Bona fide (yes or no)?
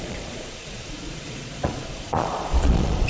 no